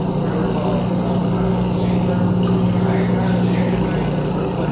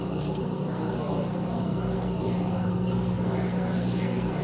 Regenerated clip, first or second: second